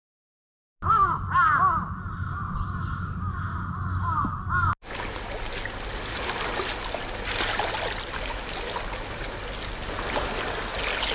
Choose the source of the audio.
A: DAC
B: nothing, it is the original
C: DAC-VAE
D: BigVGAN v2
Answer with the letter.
B